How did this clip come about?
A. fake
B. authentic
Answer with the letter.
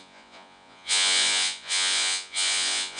A